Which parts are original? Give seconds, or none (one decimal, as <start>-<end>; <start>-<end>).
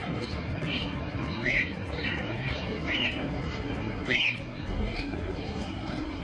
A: none